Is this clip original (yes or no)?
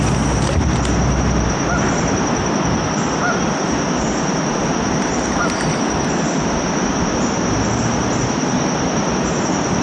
yes